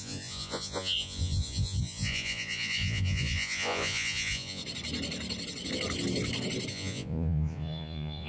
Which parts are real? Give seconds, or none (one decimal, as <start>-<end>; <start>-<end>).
4.6-6.7